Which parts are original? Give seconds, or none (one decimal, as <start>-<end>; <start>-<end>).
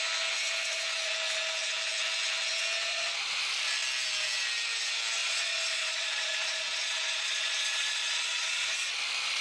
0.0-2.9; 3.4-5.2; 8.9-9.4